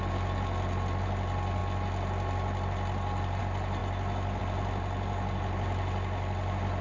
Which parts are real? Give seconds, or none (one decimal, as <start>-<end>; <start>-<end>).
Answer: 0.0-6.8